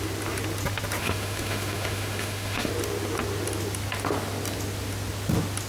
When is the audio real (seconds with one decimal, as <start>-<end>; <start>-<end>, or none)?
0.0-1.0; 2.7-5.7